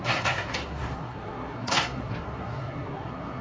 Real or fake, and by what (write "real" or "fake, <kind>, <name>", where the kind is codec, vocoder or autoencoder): fake, codec, SNAC